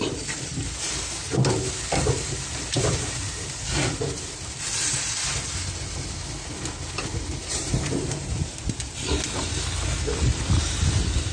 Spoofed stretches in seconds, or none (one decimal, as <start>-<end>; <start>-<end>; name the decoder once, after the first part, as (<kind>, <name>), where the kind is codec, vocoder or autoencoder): 7.5-8.8 (vocoder, BigVGAN v2)